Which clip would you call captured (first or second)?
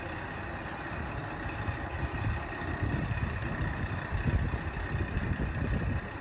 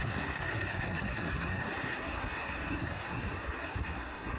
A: first